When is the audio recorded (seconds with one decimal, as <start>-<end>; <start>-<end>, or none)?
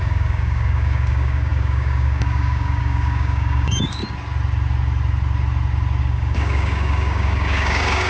4.0-6.0